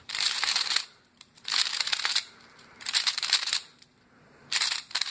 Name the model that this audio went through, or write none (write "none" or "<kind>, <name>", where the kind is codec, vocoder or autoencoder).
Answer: vocoder, BigVGAN v2